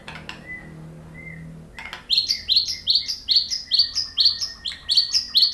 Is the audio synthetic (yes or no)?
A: no